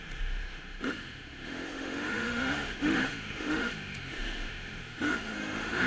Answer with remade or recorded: remade